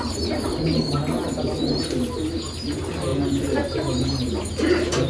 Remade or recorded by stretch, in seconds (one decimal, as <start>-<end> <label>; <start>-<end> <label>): 0.0-5.1 recorded